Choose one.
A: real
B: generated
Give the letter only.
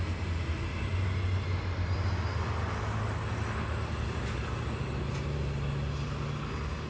A